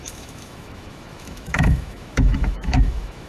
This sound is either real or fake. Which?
fake